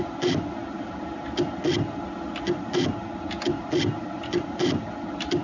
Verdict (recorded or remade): recorded